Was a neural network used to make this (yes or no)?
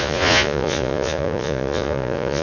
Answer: yes